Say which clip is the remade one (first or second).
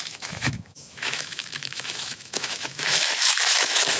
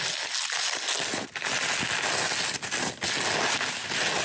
first